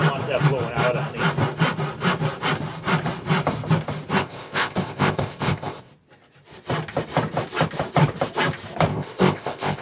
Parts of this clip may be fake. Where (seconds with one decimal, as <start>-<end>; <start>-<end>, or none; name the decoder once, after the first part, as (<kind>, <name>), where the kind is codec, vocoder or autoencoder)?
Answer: 4.2-5.9 (codec, ZipCodec); 8.9-9.8